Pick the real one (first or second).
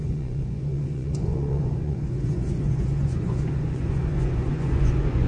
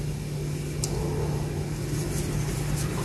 second